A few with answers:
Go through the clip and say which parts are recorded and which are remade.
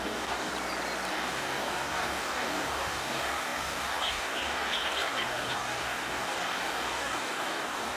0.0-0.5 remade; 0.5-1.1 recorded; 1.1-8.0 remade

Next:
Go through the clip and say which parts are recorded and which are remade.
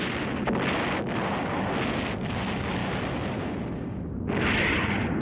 0.0-5.2 recorded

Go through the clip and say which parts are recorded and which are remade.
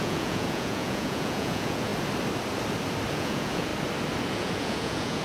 0.0-1.9 remade; 1.9-3.1 recorded; 3.1-3.7 remade; 3.7-4.3 recorded; 4.3-5.2 remade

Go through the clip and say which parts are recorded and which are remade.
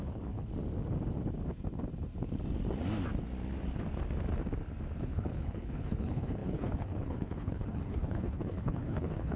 0.0-0.5 remade; 0.5-5.0 recorded; 5.0-9.4 remade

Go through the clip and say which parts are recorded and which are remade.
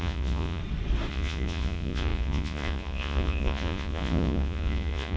0.0-0.6 remade; 0.6-1.1 recorded; 1.1-5.2 remade